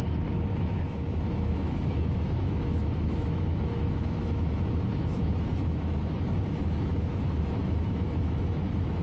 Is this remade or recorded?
remade